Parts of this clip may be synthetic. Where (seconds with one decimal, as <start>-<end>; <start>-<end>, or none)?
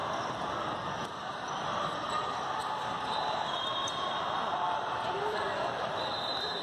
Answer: 2.6-6.6